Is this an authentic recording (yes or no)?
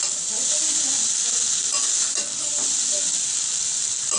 yes